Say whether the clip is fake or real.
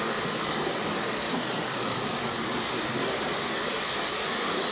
real